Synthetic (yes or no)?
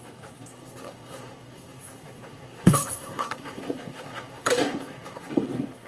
yes